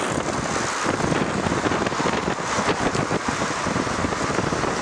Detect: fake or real real